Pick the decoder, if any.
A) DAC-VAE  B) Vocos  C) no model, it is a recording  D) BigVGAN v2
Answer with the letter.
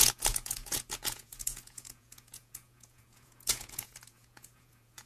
B